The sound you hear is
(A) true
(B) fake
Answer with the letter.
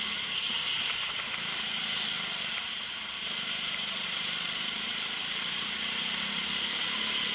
A